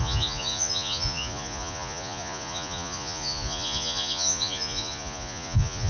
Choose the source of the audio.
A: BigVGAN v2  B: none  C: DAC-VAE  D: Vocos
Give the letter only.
D